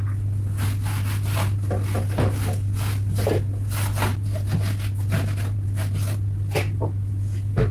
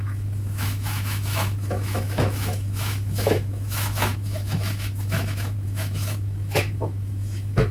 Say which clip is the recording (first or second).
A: first